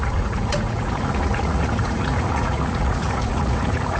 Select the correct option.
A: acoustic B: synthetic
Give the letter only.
B